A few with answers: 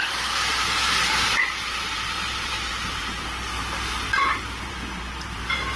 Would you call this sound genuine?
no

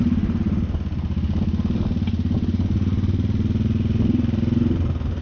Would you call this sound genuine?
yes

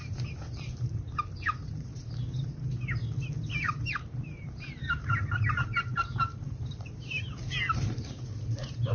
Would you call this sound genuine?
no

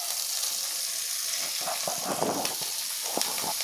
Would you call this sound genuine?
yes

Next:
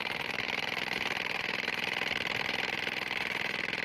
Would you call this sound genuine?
no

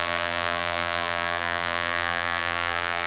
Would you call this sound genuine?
no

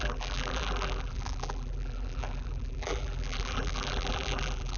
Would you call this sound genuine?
no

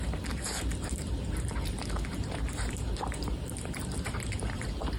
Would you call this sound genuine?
no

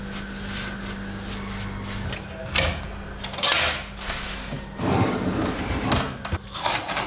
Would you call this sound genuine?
yes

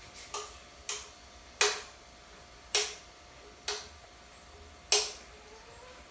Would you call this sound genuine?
yes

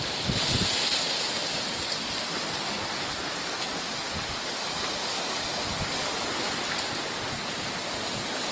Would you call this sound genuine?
yes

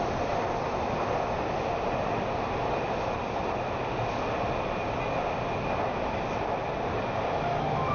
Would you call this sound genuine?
yes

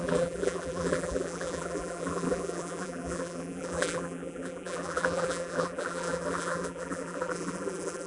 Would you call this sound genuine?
no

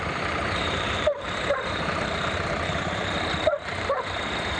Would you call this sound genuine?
no